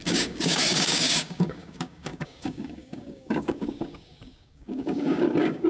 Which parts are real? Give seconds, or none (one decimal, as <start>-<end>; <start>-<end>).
none